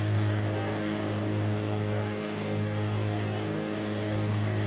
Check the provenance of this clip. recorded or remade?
remade